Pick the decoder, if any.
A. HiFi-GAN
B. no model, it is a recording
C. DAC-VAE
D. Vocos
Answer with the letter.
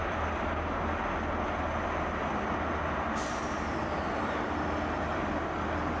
B